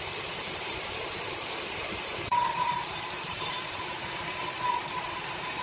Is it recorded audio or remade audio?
remade